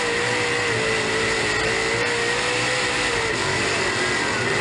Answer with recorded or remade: recorded